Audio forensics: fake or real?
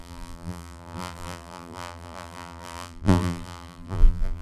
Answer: fake